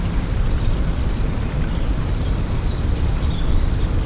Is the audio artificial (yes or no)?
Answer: no